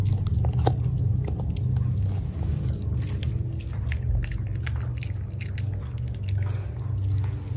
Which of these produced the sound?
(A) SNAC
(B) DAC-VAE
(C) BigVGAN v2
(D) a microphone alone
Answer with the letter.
D